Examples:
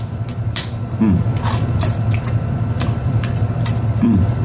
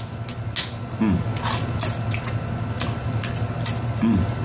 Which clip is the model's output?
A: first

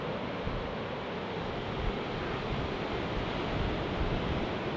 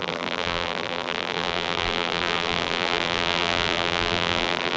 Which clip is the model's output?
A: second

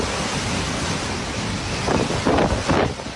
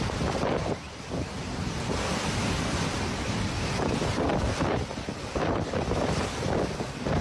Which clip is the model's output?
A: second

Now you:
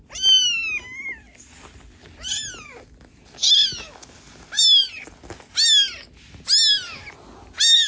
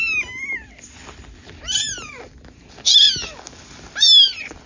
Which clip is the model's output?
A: second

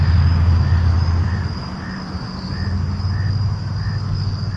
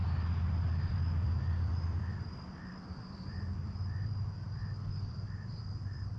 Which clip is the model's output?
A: second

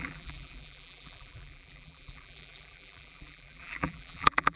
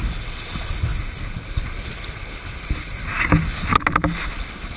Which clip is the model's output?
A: first